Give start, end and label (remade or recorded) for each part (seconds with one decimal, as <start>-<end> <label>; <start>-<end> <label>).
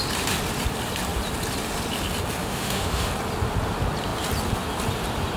0.0-2.4 recorded; 2.4-3.1 remade; 3.1-5.4 recorded